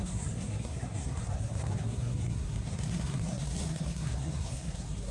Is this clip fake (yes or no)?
yes